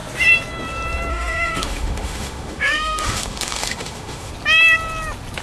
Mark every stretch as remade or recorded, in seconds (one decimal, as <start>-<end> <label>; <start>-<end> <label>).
0.0-1.1 recorded; 1.1-4.3 remade; 4.3-5.4 recorded